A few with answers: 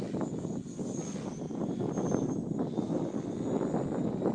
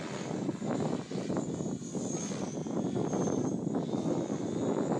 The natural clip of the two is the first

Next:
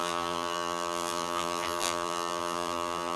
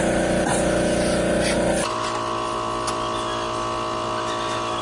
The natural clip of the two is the second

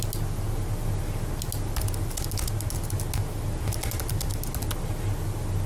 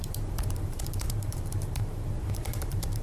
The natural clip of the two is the first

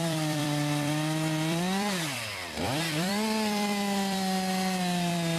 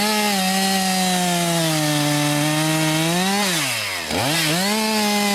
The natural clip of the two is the second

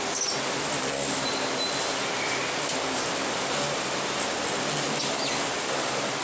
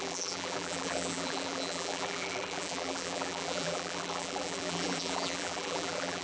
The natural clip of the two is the first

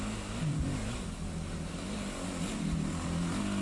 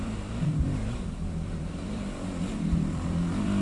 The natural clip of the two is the first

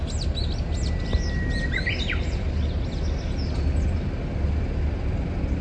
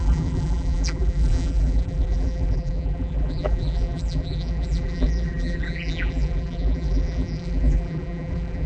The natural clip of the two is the first